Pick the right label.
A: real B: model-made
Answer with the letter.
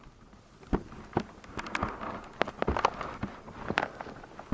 A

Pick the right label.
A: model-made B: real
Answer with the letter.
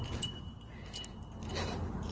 B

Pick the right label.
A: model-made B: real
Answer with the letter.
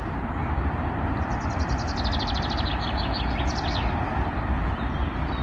B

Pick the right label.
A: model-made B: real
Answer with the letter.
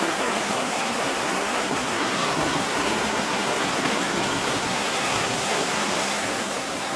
A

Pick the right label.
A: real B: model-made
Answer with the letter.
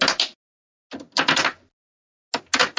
A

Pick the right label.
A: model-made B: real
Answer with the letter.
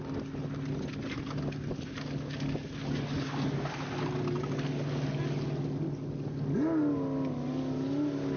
B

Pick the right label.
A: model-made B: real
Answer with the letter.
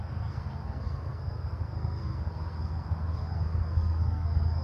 A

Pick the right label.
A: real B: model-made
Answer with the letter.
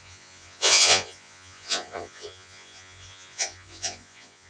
B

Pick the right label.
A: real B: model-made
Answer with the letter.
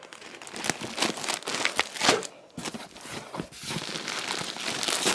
A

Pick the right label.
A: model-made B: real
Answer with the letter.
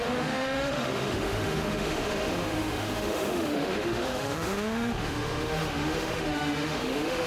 A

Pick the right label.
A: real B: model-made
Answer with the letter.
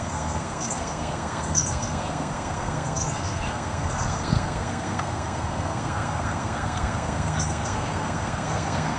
B